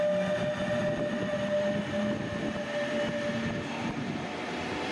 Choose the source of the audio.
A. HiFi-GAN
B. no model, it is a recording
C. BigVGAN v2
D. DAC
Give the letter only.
B